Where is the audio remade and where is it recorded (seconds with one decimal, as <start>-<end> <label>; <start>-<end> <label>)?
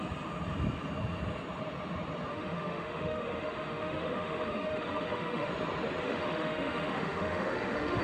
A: 0.0-2.3 recorded; 2.3-5.5 remade; 5.5-6.0 recorded; 6.0-8.0 remade